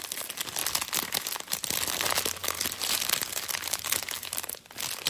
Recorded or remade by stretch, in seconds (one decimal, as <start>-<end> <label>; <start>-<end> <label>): 0.0-5.1 recorded